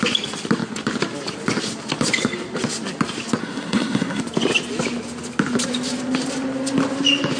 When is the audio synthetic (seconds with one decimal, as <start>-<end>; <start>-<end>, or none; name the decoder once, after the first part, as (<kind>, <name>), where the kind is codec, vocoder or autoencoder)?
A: 3.4-4.2 (codec, SNAC)